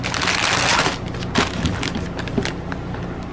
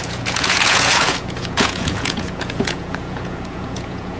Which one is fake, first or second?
second